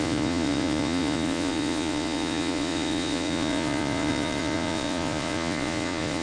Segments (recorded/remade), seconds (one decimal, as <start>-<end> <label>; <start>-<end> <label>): 0.0-6.2 remade